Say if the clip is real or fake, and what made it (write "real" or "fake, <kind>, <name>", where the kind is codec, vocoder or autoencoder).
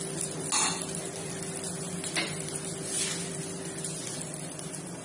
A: real